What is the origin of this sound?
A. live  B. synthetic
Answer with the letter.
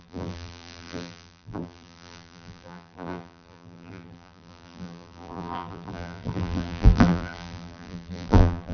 B